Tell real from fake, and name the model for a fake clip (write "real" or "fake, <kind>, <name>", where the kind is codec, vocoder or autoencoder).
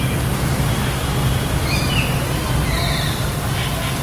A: real